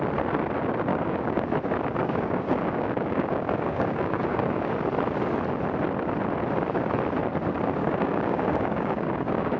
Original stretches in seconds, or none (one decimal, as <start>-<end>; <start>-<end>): 0.0-0.9; 1.4-2.0; 4.7-7.8